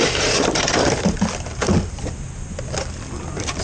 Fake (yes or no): yes